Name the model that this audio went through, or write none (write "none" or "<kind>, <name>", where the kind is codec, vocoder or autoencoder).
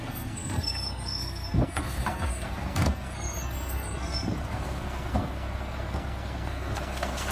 codec, SNAC